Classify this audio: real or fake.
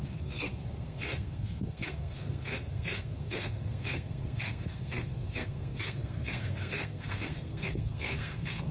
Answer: fake